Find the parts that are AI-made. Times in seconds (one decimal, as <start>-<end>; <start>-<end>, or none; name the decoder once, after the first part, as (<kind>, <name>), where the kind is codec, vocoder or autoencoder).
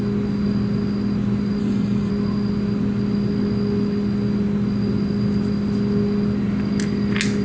1.6-2.1 (codec, DAC)